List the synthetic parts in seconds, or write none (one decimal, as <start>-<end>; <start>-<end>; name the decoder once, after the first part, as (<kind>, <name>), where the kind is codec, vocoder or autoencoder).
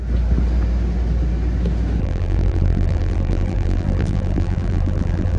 2.0-5.4 (vocoder, BigVGAN v2)